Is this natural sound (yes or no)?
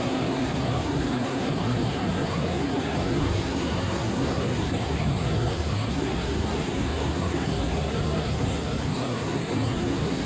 no